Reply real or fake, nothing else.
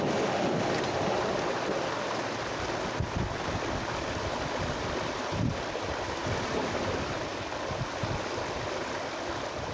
real